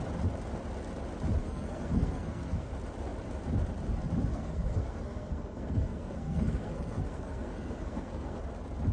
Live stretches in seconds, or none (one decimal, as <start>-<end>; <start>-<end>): 0.0-1.4; 2.7-4.3; 8.4-8.9

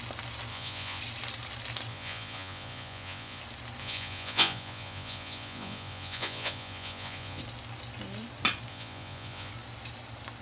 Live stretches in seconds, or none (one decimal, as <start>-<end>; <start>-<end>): 0.0-0.5; 1.0-1.9; 3.4-3.8; 7.4-8.7; 9.5-10.4

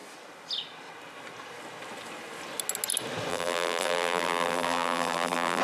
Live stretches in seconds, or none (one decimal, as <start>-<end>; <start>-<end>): 0.0-3.3

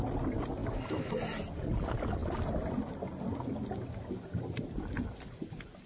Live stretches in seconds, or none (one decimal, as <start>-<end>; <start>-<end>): 0.0-0.6; 1.1-5.9

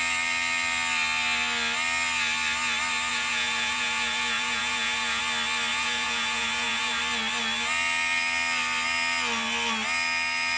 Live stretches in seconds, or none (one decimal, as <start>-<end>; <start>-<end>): 0.0-3.1; 5.2-5.7; 7.0-10.6

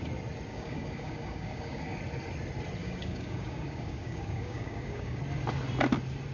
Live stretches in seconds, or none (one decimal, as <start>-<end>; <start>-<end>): 0.0-0.5; 2.0-2.8; 5.2-6.3